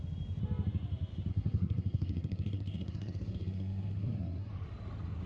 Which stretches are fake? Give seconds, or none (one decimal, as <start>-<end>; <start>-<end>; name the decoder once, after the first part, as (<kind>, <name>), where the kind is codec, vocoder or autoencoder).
1.3-4.5 (codec, SNAC)